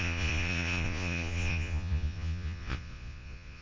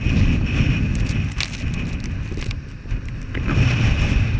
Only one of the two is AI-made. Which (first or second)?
first